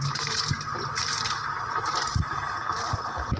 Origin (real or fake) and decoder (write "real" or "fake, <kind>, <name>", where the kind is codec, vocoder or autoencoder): fake, vocoder, BigVGAN v2